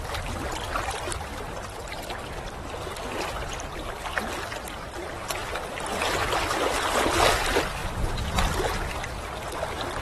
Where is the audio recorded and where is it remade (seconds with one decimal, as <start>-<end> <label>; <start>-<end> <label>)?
0.0-10.0 recorded

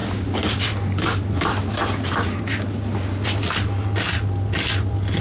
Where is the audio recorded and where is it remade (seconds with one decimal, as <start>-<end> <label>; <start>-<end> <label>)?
0.0-5.2 recorded